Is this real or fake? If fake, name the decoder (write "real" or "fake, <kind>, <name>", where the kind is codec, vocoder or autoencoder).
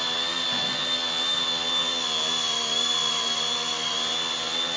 real